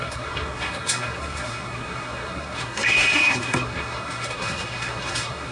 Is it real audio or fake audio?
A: fake